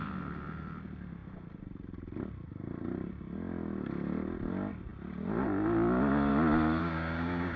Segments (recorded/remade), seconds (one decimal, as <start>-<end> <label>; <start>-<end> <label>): 0.0-6.8 recorded; 6.8-7.6 remade